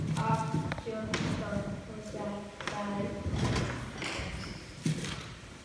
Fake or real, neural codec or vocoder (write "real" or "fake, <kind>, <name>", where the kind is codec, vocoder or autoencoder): real